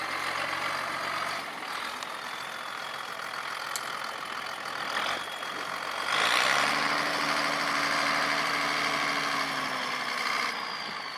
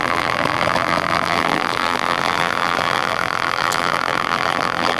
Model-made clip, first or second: second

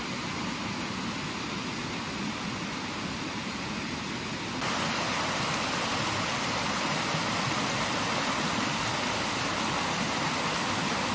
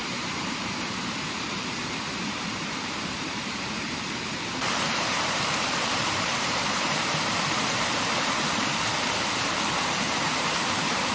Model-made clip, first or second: second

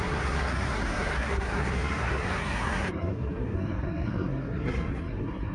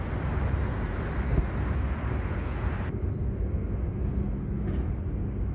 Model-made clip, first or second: first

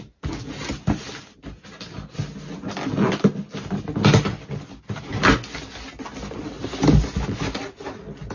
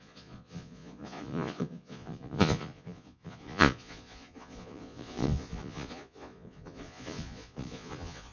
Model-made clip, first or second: second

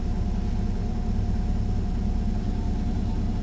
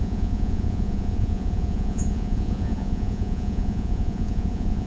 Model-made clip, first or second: second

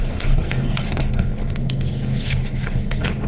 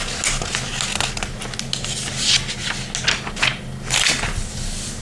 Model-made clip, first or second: first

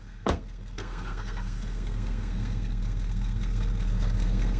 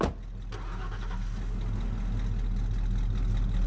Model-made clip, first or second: first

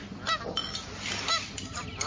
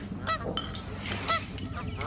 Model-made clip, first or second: first